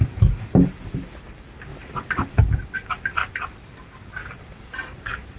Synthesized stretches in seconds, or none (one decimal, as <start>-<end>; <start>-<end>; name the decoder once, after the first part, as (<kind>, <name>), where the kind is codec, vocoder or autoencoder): 1.7-2.4 (vocoder, BigVGAN v2); 3.2-4.2